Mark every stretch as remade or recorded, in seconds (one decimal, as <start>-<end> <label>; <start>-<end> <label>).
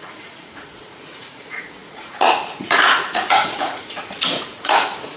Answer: 0.0-5.2 remade